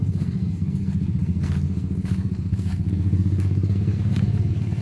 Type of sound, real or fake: fake